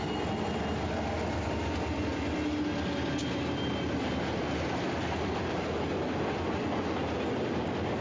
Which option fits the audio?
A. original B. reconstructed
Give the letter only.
A